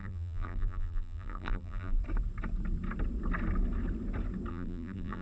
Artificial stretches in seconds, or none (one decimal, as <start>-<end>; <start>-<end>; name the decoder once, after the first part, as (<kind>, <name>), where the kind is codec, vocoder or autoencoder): 0.0-2.0 (vocoder, BigVGAN v2); 4.5-5.2